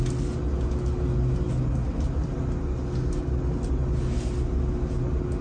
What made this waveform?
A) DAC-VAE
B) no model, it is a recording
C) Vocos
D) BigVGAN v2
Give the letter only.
B